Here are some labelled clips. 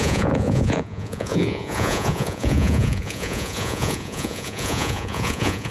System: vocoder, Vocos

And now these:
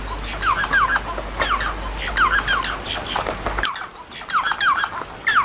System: none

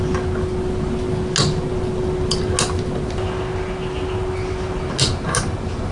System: none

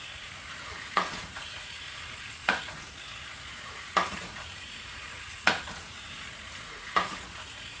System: vocoder, Vocos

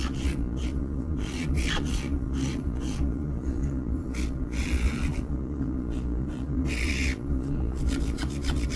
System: vocoder, Vocos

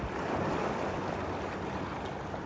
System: none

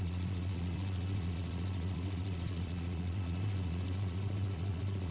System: vocoder, Vocos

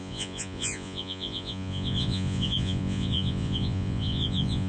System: vocoder, Vocos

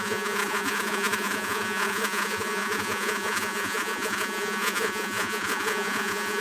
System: vocoder, Vocos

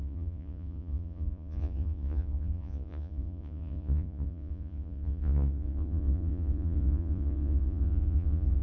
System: vocoder, Vocos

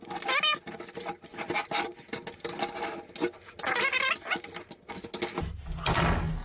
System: none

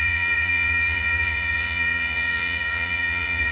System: vocoder, Vocos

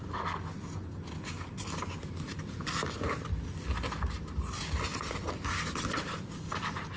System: none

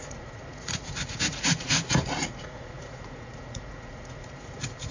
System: vocoder, Vocos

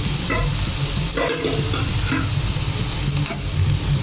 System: none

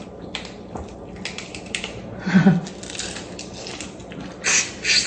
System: none